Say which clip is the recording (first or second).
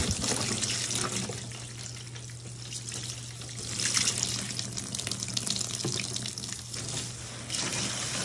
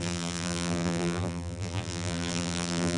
first